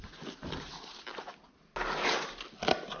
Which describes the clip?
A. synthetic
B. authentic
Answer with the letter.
B